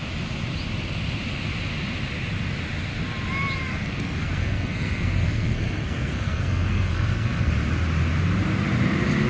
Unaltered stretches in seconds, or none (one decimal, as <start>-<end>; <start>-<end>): 0.0-3.7; 7.5-9.3